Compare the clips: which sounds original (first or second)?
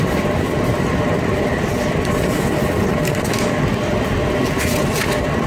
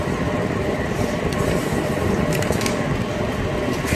first